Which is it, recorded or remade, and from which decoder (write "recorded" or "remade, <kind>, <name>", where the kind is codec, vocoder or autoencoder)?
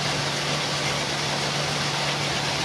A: recorded